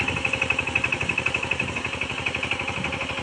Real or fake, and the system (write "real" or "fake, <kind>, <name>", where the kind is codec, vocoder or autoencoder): real